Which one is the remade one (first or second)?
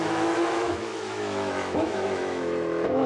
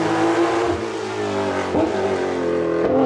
first